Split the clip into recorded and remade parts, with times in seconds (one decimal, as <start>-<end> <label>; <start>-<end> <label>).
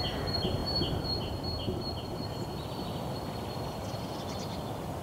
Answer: 0.0-5.0 recorded